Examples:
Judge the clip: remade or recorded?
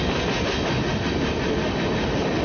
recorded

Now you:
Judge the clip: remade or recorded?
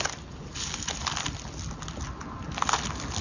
recorded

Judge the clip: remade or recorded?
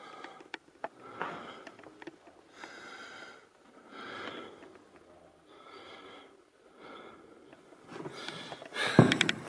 recorded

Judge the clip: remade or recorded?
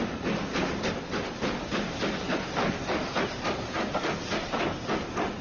recorded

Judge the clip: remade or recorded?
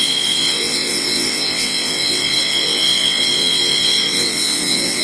remade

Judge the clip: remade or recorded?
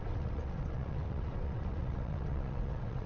remade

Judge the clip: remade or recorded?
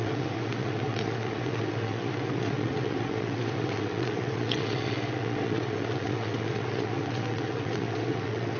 remade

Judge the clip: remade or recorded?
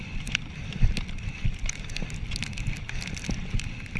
recorded